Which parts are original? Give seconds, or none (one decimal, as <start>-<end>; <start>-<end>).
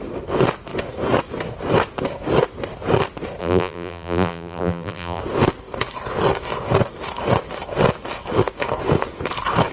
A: 0.0-3.4; 5.2-9.7